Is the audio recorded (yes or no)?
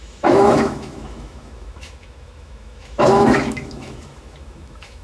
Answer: no